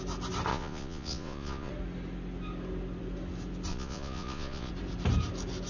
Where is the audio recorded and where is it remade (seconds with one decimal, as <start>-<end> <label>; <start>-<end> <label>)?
0.0-0.5 recorded; 0.5-1.7 remade; 1.7-3.7 recorded; 3.7-4.7 remade; 4.7-5.7 recorded

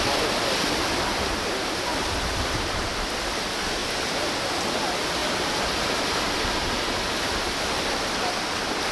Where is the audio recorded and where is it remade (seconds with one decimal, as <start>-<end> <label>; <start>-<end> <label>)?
0.0-1.9 recorded; 1.9-2.9 remade; 2.9-3.8 recorded; 3.8-4.4 remade; 4.4-5.2 recorded; 5.2-7.6 remade; 7.6-8.9 recorded

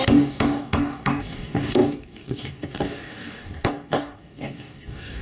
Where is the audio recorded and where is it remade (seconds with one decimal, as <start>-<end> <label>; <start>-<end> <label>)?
0.0-5.2 remade

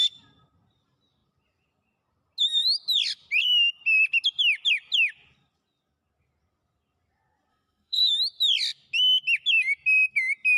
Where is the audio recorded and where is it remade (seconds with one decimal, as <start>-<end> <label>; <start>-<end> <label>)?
0.0-7.5 recorded; 7.5-8.1 remade; 8.1-10.6 recorded

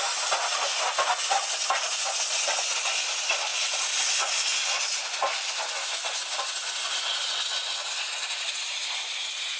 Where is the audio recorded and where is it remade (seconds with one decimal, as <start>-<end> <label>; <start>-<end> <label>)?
0.0-3.5 recorded; 3.5-4.0 remade; 4.0-9.6 recorded

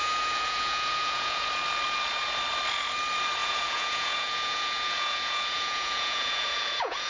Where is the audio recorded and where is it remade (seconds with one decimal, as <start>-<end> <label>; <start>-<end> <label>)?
0.0-1.5 remade; 1.5-3.4 recorded; 3.4-7.1 remade

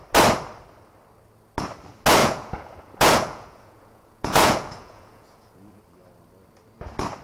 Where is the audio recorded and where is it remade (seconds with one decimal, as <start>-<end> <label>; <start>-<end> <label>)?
0.0-2.2 recorded; 2.2-5.8 remade; 5.8-7.2 recorded